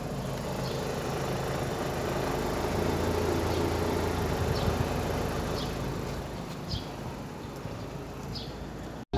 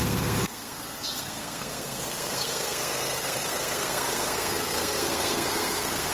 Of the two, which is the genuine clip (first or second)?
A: first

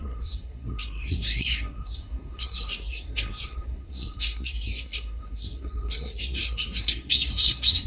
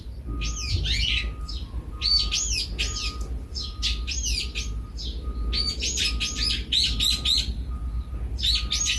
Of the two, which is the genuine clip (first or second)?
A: second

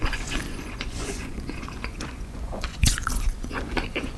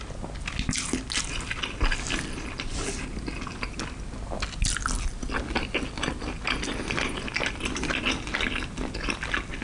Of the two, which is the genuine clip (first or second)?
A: second